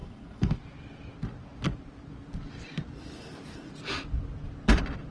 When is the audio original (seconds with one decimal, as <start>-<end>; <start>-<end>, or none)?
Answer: 0.6-5.1